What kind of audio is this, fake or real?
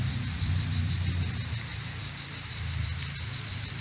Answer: fake